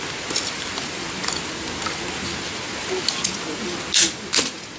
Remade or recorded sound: recorded